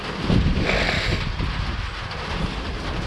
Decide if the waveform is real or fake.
real